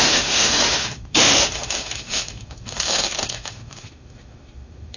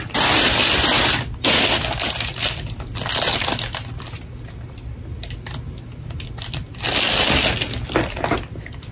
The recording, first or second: second